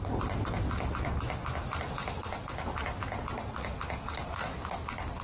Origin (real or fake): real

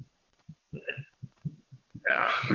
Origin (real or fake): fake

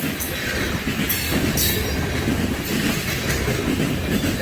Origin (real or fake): real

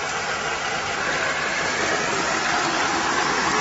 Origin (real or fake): real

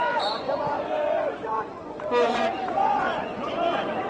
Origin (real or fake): fake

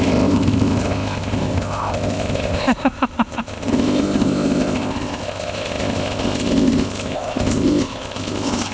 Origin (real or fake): fake